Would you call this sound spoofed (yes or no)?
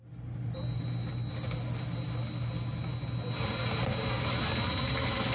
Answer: no